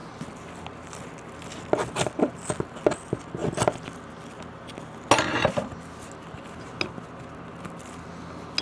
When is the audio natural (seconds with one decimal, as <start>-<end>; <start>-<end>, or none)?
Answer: 0.0-8.6